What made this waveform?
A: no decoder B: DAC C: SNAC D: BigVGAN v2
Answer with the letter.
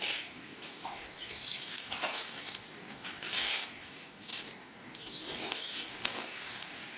B